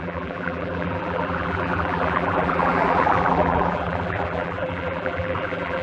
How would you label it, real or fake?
fake